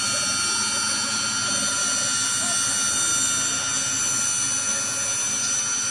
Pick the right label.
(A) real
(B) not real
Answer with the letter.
A